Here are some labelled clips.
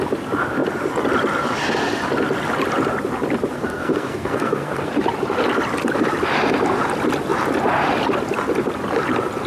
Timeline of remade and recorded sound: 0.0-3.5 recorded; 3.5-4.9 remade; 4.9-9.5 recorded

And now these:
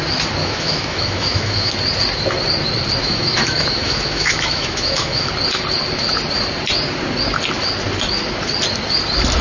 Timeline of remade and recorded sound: 0.0-0.4 recorded; 0.4-1.7 remade; 1.7-3.0 recorded; 3.0-5.3 remade; 5.3-9.4 recorded

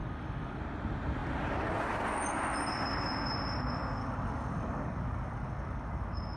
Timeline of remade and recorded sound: 0.0-0.6 remade; 0.6-4.0 recorded; 4.0-6.4 remade

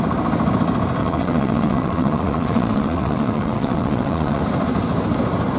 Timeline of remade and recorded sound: 0.0-1.0 recorded; 1.0-4.4 remade; 4.4-5.6 recorded